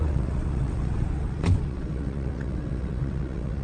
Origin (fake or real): fake